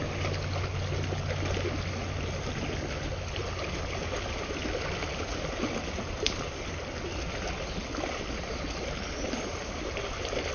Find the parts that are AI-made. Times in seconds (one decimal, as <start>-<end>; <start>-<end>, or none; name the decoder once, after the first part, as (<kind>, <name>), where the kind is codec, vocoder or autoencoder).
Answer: none